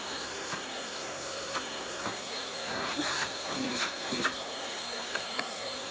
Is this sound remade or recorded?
remade